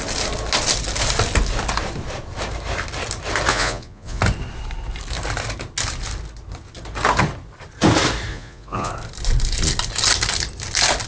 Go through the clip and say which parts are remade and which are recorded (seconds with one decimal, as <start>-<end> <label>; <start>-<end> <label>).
0.0-3.5 recorded; 3.5-4.2 remade; 4.2-8.3 recorded; 8.3-8.9 remade; 8.9-11.1 recorded